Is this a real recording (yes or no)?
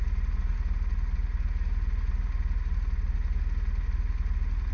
yes